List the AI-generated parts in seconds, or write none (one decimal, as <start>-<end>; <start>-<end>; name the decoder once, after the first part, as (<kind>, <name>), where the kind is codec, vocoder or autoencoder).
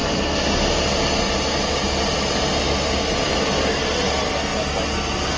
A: none